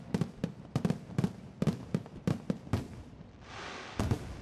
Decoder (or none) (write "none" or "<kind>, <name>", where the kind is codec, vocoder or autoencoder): none